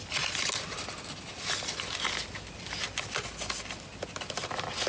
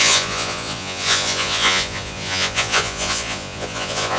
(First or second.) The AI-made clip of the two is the second